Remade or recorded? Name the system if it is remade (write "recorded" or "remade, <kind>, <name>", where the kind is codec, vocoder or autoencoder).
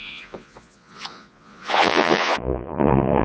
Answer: remade, vocoder, Vocos